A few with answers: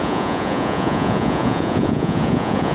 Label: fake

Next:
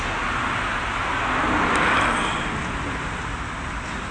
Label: real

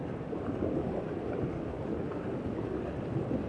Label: real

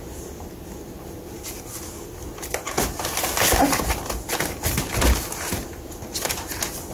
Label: real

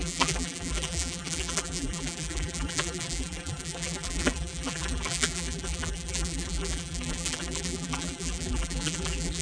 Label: fake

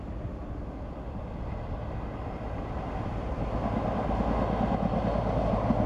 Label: real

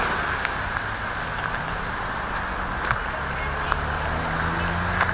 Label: real